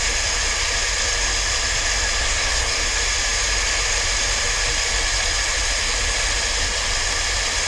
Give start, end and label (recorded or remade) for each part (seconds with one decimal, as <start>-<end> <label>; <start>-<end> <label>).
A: 0.0-2.2 recorded; 2.2-2.8 remade; 2.8-7.7 recorded